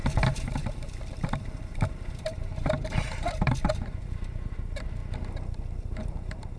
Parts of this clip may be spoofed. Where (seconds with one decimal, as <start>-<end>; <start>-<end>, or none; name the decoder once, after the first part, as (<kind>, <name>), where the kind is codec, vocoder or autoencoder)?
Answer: 0.0-5.0 (vocoder, BigVGAN v2); 5.8-6.6